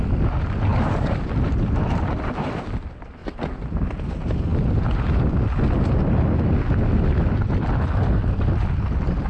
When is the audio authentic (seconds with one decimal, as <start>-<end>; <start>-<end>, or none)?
0.0-9.3